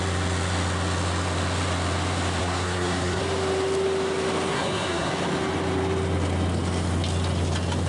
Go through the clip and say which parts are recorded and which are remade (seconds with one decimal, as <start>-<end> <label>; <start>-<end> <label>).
0.0-2.4 recorded; 2.4-3.2 remade; 3.2-4.5 recorded; 4.5-5.1 remade; 5.1-7.9 recorded